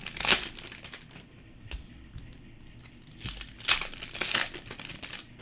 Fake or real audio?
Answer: real